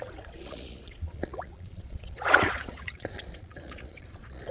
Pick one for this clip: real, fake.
fake